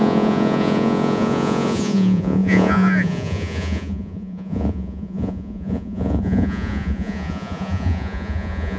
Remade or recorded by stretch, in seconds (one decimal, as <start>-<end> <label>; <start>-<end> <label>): 0.0-8.8 remade